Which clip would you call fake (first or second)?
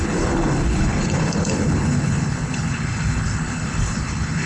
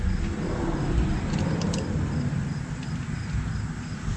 first